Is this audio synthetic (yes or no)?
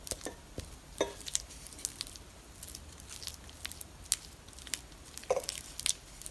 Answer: no